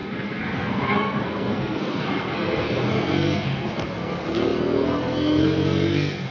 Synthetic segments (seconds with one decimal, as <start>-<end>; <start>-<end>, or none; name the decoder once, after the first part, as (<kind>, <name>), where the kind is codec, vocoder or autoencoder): 0.0-6.3 (codec, SNAC)